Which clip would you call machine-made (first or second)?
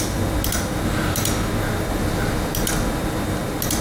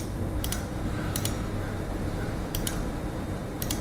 second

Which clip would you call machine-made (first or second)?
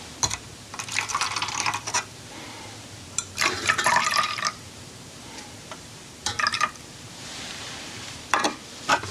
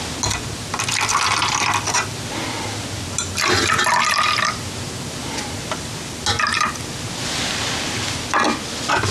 first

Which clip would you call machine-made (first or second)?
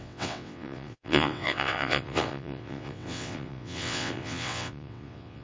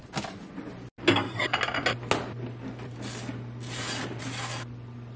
first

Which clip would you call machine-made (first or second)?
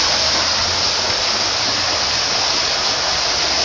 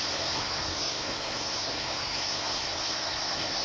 second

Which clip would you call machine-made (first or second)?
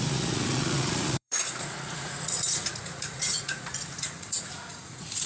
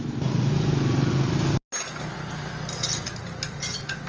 first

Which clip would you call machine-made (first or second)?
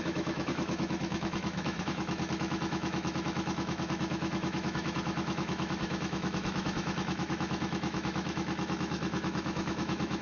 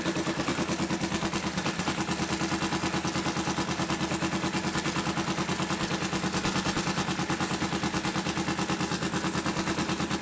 first